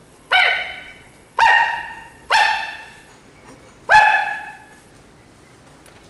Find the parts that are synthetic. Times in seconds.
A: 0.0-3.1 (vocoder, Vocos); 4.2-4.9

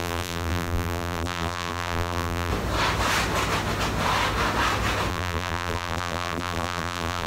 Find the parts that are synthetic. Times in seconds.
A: 0.0-2.5 (vocoder, BigVGAN v2); 5.1-7.3

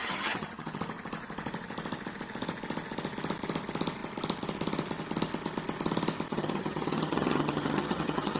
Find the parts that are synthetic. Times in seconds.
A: 0.0-0.8 (vocoder, HiFi-GAN); 6.3-8.4